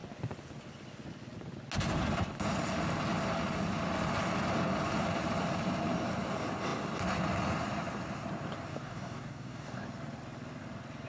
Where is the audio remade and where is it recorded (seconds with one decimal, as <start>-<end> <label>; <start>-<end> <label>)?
0.0-8.7 recorded; 8.7-9.8 remade; 9.8-11.1 recorded